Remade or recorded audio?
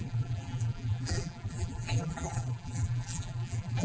remade